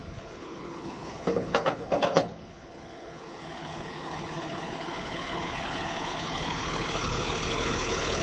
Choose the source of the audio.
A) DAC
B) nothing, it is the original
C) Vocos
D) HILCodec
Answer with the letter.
D